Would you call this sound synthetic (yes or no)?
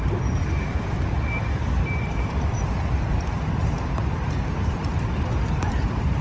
yes